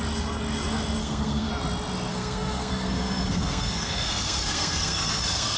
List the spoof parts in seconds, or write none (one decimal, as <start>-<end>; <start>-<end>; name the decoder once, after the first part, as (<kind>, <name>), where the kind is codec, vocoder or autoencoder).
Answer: 1.0-1.5 (codec, SNAC); 2.1-5.6